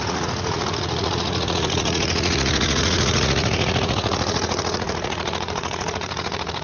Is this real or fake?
fake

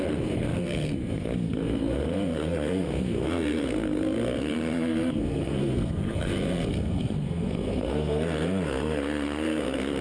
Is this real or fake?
fake